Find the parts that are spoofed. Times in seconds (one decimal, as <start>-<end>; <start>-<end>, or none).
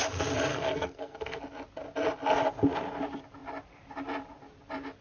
0.5-1.4